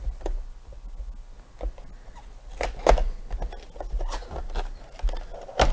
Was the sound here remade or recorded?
recorded